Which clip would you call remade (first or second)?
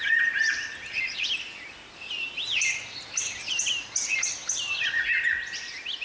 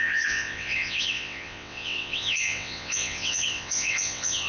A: second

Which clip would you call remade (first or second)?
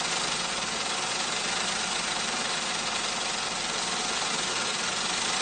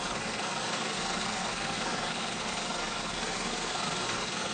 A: second